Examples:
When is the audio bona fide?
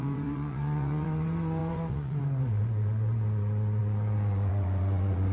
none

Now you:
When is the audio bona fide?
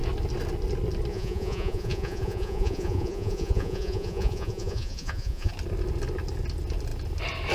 0.0-1.1; 5.5-7.5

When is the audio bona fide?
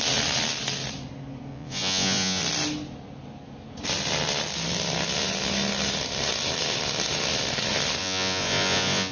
0.0-1.5; 2.4-8.0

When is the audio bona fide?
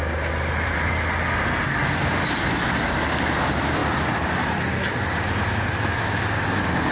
0.0-6.9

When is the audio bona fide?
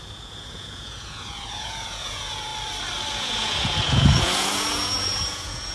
2.5-3.1